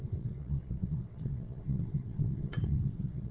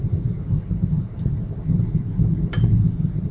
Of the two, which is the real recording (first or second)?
second